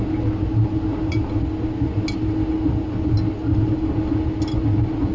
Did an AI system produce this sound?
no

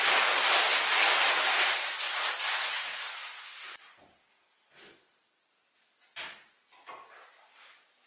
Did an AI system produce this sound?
no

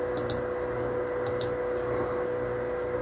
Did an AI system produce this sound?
no